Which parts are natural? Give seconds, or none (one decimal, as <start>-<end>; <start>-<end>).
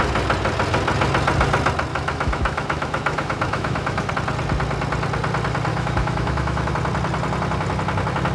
0.0-1.9; 4.1-5.7; 6.7-8.3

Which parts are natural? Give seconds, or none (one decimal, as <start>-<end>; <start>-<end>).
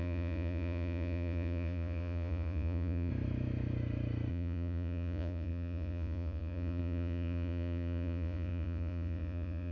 3.1-4.3